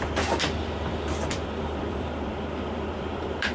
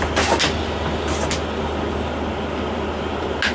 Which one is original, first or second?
second